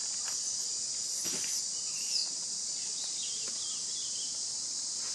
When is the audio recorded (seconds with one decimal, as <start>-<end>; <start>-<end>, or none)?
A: 0.0-2.2; 4.1-5.1